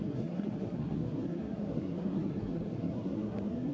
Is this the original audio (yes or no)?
no